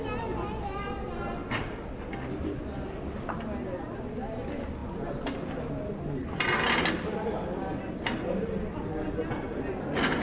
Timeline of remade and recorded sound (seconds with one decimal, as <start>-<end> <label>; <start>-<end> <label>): 0.0-10.2 recorded